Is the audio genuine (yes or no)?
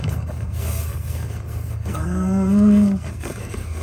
no